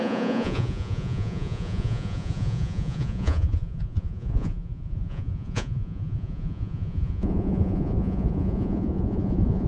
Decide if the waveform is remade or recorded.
remade